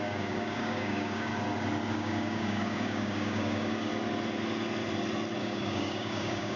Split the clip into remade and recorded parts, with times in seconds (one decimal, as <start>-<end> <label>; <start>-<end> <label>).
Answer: 0.0-1.3 remade; 1.3-1.9 recorded; 1.9-3.9 remade; 3.9-5.4 recorded; 5.4-6.6 remade